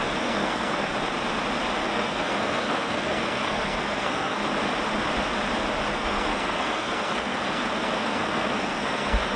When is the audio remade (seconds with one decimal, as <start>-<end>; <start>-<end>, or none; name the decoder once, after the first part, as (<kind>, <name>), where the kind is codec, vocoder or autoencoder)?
0.0-0.9 (codec, SNAC); 1.9-4.4; 5.9-9.4